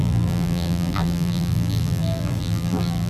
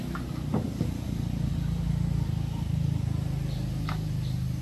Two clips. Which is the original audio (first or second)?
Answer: second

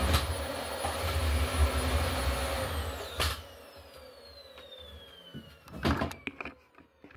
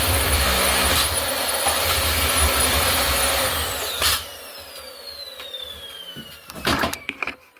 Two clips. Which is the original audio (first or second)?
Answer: first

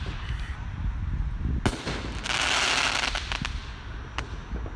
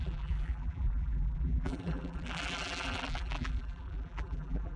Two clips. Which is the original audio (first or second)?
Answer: first